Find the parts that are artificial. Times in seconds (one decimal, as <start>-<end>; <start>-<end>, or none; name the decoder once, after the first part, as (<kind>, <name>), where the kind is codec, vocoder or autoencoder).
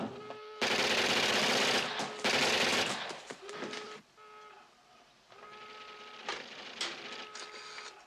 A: none